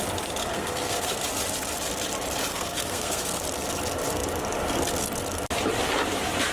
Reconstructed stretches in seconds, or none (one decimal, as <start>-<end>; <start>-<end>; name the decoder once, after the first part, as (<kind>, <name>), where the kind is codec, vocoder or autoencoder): 0.5-1.2 (codec, SNAC); 2.5-3.4